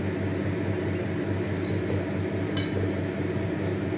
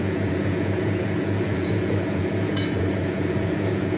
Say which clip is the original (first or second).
first